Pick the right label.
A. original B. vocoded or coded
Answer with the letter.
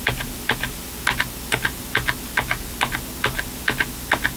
A